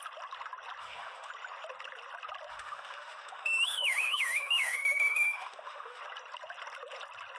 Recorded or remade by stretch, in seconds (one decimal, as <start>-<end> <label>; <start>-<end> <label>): 0.0-0.8 recorded; 0.8-1.3 remade; 1.3-2.5 recorded; 2.5-6.0 remade; 6.0-7.4 recorded